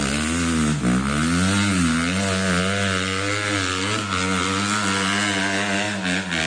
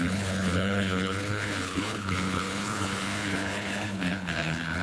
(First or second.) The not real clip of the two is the second